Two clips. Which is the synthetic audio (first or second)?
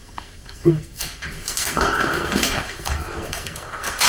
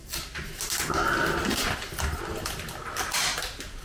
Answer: first